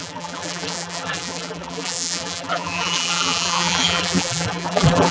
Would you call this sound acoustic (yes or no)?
no